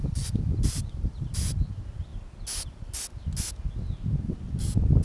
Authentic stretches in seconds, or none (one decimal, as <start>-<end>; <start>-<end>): 0.0-5.0